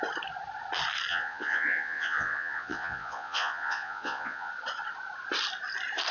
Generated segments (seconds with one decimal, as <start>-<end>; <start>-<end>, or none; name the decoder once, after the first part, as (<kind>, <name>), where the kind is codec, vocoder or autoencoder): 1.1-4.5 (vocoder, Vocos)